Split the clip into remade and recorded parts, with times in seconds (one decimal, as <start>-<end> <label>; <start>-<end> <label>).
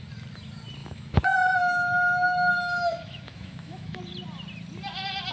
0.0-0.8 recorded; 0.8-4.0 remade; 4.0-5.3 recorded